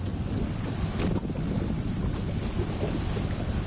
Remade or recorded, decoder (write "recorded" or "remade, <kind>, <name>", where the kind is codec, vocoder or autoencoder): recorded